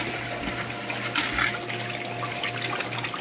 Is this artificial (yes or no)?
no